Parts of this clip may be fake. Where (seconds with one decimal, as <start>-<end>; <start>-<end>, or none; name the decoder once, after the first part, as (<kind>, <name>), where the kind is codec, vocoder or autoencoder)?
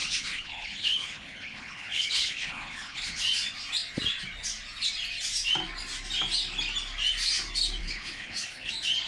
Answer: 0.0-3.2 (codec, HILCodec); 7.8-8.7